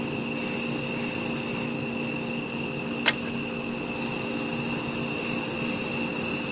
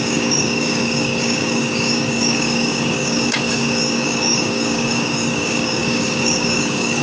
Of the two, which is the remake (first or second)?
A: second